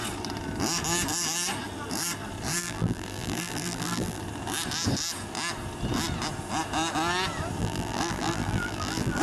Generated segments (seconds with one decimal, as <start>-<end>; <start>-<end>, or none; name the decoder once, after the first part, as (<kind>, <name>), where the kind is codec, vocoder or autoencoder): 2.6-4.2 (vocoder, BigVGAN v2); 7.6-9.2